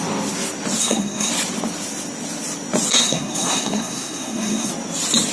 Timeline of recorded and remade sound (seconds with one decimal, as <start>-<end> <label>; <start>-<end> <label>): 0.0-0.8 recorded; 0.8-1.3 remade; 1.3-2.9 recorded; 2.9-4.7 remade; 4.7-5.3 recorded